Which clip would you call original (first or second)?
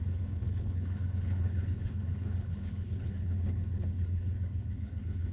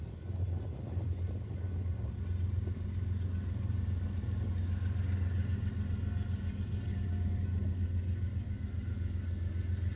second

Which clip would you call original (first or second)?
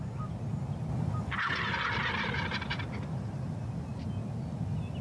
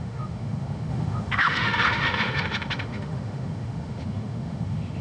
first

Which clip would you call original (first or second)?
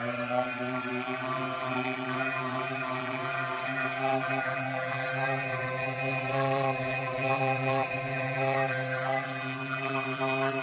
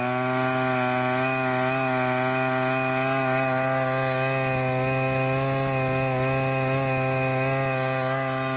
second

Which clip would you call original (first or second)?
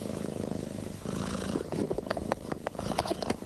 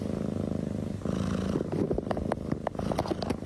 second